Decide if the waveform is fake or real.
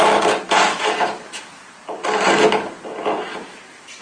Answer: real